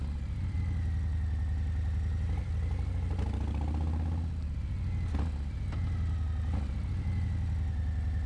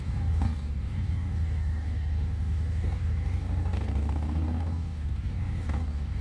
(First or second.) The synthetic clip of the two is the second